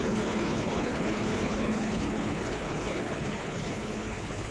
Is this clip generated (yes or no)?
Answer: yes